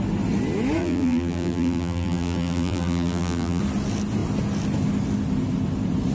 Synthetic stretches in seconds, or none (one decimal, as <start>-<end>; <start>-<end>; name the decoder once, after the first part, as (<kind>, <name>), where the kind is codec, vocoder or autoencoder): 0.8-3.6 (vocoder, BigVGAN v2)